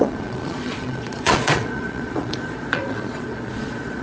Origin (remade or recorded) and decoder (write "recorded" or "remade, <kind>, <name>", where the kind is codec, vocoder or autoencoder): remade, vocoder, Vocos